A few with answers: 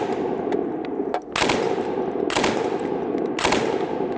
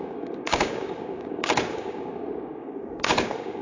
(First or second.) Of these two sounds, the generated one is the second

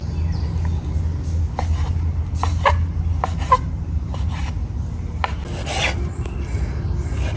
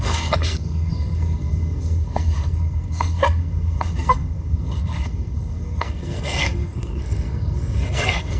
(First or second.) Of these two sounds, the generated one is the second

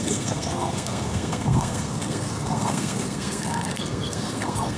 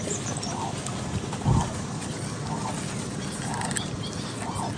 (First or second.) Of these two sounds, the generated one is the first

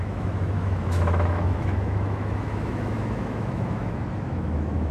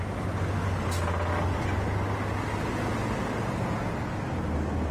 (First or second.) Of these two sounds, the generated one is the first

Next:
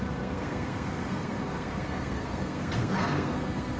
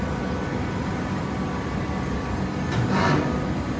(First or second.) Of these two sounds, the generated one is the first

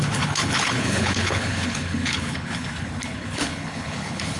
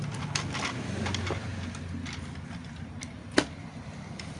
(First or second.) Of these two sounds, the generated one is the first